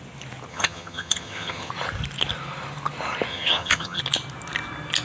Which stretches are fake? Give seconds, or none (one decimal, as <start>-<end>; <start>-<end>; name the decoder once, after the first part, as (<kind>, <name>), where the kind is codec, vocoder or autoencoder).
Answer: 0.5-1.7 (vocoder, HiFi-GAN); 3.3-4.0